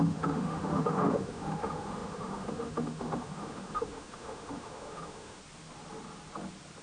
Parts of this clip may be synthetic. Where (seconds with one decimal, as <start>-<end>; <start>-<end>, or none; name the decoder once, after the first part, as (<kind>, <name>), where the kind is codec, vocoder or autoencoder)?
0.0-5.4 (autoencoder, DAC-VAE)